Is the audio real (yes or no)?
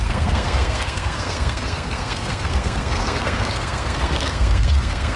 no